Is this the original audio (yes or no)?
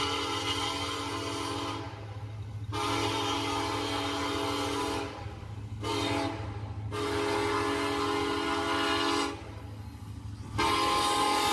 yes